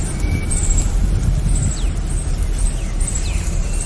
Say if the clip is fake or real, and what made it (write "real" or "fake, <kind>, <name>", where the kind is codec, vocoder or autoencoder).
real